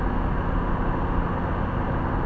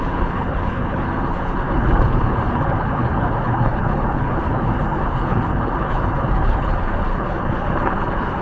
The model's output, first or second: second